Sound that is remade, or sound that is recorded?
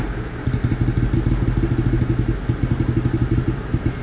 recorded